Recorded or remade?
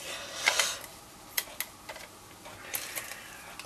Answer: recorded